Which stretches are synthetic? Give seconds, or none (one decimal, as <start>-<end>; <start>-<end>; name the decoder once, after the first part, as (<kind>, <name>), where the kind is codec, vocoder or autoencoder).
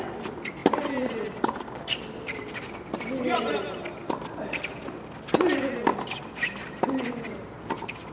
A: none